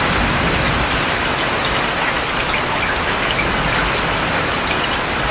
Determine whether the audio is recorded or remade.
recorded